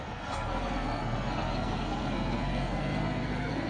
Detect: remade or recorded remade